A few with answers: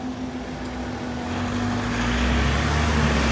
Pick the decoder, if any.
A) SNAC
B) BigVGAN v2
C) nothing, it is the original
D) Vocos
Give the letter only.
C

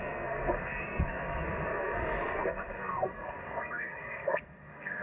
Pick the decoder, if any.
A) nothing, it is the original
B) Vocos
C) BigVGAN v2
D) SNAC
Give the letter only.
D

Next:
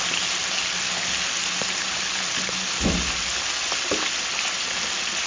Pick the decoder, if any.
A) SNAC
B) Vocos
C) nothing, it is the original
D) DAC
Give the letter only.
C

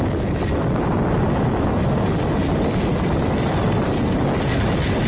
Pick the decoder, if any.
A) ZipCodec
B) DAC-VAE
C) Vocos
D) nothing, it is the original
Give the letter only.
D